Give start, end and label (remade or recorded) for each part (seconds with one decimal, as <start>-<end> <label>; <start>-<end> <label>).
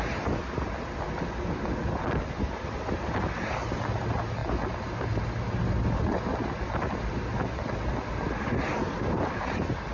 0.0-9.9 recorded